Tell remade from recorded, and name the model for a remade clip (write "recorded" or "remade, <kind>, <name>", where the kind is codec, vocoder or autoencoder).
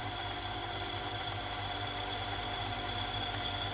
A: recorded